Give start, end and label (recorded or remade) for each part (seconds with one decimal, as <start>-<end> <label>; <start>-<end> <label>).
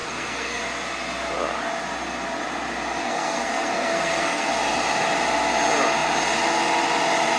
0.0-0.6 remade; 0.6-3.0 recorded; 3.0-4.5 remade; 4.5-7.4 recorded